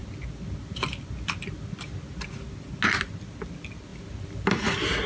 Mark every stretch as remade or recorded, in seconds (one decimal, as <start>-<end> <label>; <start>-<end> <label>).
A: 0.0-5.1 recorded